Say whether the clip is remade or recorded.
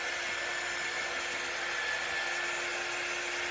recorded